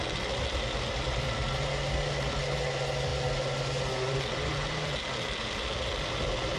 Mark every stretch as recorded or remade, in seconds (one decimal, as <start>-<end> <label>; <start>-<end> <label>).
0.0-6.6 recorded